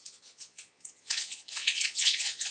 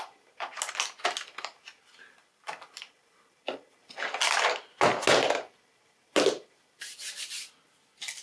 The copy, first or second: first